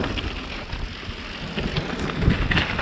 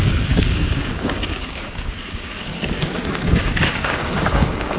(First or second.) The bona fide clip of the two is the first